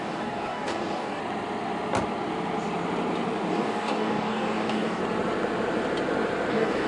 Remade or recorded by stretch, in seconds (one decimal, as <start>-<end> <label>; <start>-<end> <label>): 0.0-1.2 remade; 1.2-3.5 recorded; 3.5-5.0 remade; 5.0-6.5 recorded; 6.5-6.9 remade